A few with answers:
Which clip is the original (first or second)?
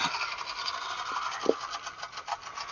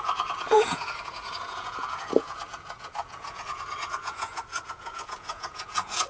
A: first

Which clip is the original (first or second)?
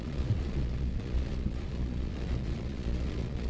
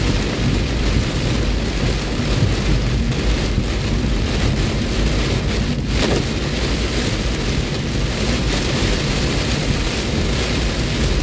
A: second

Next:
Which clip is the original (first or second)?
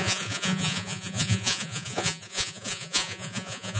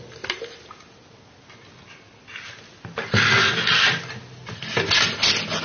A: second